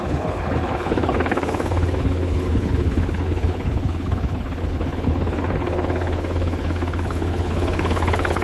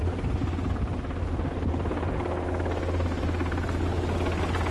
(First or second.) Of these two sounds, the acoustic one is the second